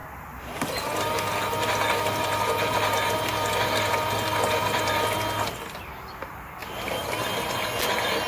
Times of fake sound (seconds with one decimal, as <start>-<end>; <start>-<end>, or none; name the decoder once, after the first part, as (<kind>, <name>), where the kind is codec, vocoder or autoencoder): none